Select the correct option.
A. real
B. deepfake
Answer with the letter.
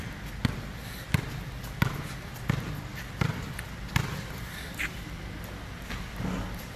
A